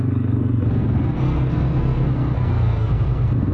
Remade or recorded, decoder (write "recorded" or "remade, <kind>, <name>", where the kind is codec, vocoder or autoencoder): remade, codec, SNAC